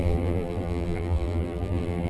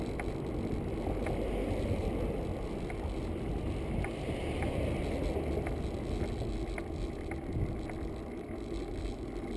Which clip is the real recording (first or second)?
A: second